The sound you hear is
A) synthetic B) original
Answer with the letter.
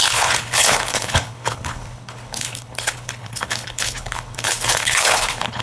A